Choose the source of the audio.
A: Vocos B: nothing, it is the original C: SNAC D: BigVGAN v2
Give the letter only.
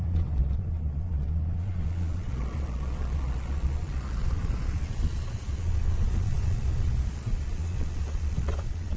A